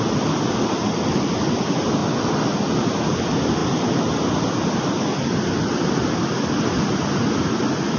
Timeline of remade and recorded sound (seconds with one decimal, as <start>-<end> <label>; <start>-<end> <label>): 0.0-8.0 recorded